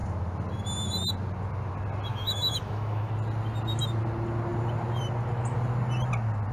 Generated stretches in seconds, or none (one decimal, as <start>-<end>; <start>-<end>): 2.1-3.1